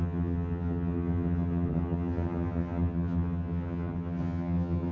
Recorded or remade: remade